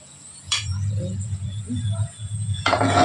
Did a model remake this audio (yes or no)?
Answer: yes